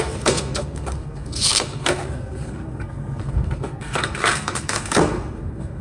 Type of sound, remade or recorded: remade